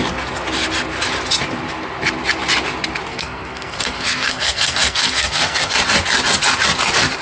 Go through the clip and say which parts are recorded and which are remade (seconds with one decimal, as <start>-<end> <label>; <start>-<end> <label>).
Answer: 0.0-3.1 recorded; 3.1-5.7 remade; 5.7-7.2 recorded